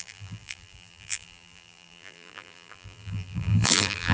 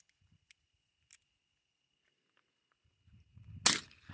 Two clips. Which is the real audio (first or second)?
second